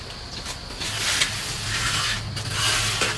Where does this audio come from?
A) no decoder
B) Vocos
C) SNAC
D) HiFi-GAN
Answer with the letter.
A